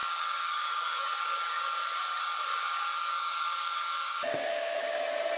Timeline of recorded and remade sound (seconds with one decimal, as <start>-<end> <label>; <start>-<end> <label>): 0.0-2.0 remade; 2.0-2.5 recorded; 2.5-5.0 remade; 5.0-5.4 recorded